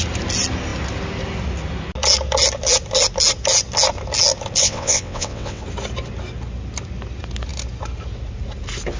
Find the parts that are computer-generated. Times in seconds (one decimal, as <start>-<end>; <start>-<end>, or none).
4.6-5.6